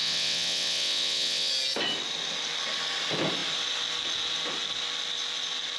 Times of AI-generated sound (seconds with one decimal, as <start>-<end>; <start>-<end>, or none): 0.0-1.5